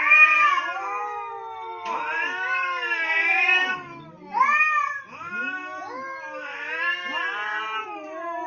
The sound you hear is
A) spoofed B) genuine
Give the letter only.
B